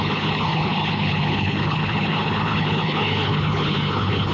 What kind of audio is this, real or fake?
fake